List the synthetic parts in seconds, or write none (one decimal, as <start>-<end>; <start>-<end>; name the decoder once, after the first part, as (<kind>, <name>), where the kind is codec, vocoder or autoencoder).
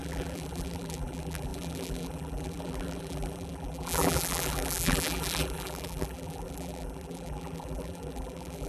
0.0-8.7 (vocoder, BigVGAN v2)